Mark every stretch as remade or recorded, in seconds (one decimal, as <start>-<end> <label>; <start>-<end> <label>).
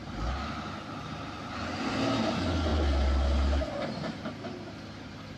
0.0-5.4 recorded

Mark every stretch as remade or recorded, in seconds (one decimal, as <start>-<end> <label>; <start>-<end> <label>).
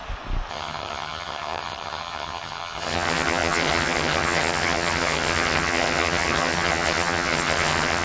0.0-0.5 recorded; 0.5-8.0 remade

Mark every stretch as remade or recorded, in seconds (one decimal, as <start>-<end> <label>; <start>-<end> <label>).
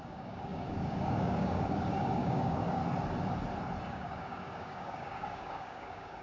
0.0-2.8 remade; 2.8-3.8 recorded; 3.8-6.2 remade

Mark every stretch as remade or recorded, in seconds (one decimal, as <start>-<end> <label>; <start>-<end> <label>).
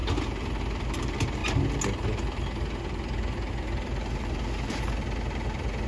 0.0-5.9 recorded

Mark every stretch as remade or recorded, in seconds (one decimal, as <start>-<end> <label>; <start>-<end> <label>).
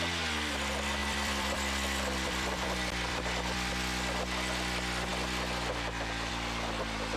0.0-1.0 recorded; 1.0-3.7 remade; 3.7-7.2 recorded